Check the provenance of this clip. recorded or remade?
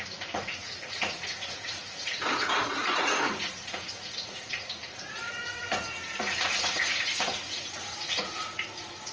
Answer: remade